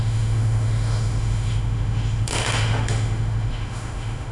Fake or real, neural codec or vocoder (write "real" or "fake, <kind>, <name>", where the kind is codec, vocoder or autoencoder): fake, autoencoder, DAC-VAE